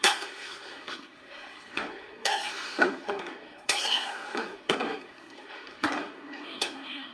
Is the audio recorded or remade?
remade